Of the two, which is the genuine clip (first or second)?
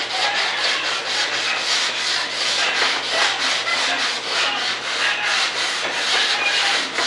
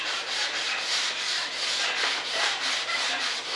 first